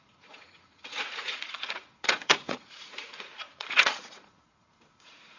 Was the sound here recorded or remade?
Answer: remade